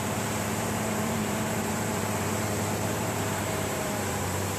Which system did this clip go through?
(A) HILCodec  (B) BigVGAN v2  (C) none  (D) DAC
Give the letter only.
B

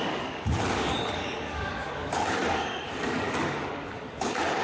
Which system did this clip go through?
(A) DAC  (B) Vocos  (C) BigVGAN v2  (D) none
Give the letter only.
A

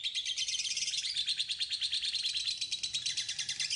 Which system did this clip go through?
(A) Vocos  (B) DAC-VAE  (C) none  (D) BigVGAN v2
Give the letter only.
C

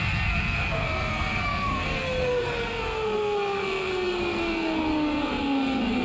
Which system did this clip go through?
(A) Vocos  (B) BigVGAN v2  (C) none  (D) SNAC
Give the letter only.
D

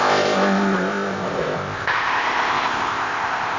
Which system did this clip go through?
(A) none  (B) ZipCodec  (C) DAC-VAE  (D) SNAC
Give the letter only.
B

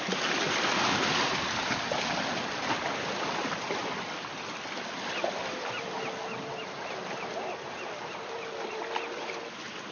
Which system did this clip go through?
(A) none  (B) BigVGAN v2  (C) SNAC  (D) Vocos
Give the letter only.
A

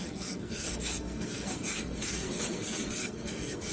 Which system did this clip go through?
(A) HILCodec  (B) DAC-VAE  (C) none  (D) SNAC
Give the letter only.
D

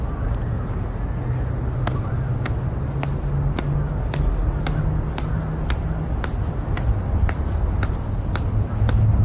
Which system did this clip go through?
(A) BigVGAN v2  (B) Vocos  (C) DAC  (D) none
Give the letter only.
D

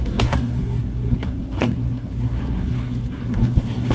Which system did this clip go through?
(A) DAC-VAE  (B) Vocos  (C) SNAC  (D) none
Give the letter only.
C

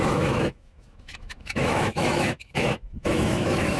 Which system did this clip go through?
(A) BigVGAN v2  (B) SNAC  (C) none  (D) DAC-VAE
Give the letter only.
D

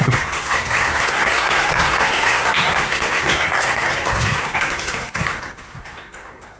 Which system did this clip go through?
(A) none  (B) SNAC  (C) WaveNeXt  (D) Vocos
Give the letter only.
B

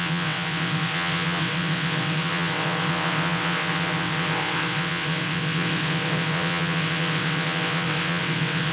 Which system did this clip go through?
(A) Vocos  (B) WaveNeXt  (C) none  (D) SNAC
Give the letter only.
B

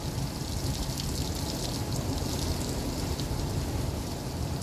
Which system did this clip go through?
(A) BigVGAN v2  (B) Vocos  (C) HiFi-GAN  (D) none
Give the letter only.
D